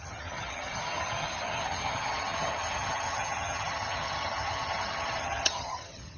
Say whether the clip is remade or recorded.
remade